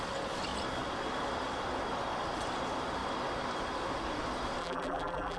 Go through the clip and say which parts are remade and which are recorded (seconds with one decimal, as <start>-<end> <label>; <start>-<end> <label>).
0.0-4.6 recorded; 4.6-5.4 remade